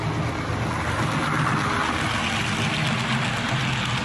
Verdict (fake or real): real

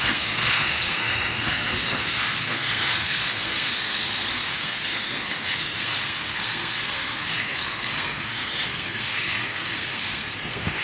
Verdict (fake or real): fake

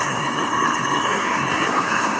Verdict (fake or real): fake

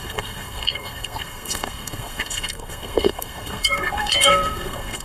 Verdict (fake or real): fake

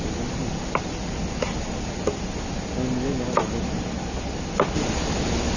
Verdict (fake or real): real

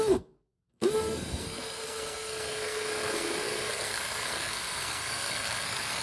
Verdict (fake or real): fake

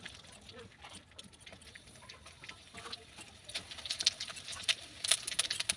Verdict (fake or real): real